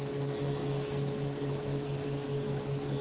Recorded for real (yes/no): no